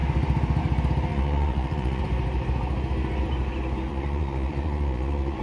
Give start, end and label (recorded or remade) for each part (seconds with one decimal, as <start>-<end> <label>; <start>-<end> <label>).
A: 0.0-1.1 recorded; 1.1-2.0 remade; 2.0-3.9 recorded; 3.9-5.4 remade